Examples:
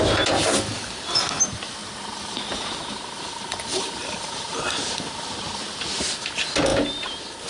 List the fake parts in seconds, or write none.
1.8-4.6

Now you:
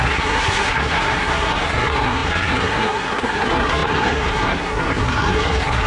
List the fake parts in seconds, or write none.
0.0-5.9

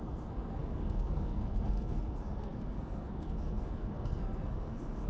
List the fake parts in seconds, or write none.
0.0-5.1

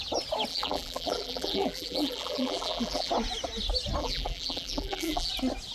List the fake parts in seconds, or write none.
0.5-3.1; 4.0-5.3

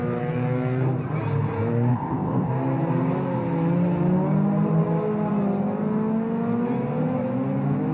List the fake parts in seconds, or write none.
1.9-2.5